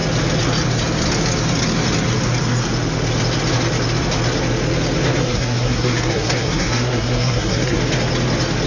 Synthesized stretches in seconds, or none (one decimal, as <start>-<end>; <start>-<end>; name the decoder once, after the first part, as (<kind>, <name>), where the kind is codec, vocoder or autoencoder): 5.2-7.8 (codec, SNAC)